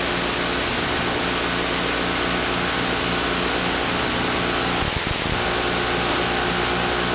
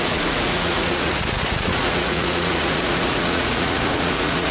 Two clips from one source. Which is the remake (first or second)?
second